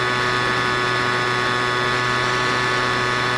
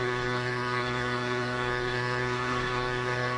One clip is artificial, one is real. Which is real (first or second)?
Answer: first